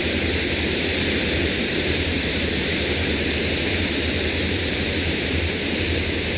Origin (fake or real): fake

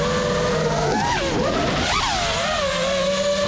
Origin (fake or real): real